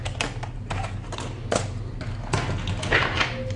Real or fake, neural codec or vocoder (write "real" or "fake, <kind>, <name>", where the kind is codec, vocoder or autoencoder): real